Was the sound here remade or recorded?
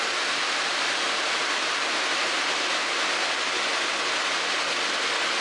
recorded